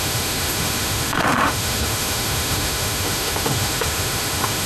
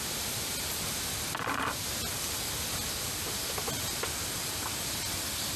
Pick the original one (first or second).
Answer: second